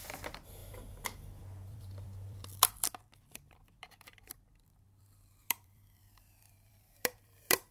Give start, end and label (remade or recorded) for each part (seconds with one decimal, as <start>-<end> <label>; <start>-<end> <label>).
0.0-7.7 remade